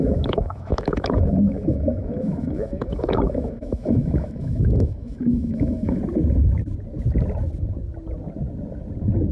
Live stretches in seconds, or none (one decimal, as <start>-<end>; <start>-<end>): 6.0-9.3